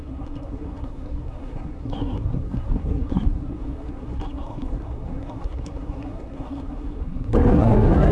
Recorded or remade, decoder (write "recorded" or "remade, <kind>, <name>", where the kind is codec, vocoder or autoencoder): remade, codec, SNAC